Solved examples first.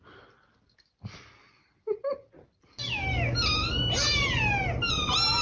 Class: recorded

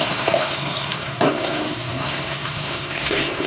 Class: remade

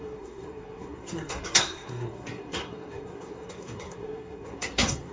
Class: remade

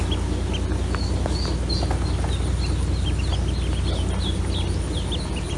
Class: recorded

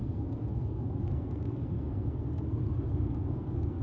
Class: remade